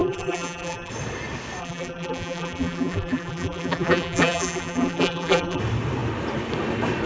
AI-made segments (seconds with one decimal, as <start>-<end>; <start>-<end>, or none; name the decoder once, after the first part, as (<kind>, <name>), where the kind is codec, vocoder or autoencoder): 0.0-0.9 (vocoder, BigVGAN v2); 1.6-5.6